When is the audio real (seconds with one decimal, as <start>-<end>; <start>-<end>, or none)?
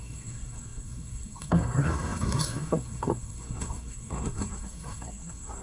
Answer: none